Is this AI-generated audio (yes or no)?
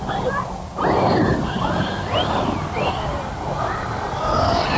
no